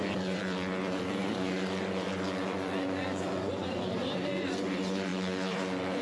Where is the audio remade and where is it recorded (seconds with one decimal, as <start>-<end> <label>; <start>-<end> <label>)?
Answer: 0.0-6.0 remade